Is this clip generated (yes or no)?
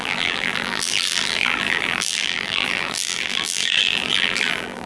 yes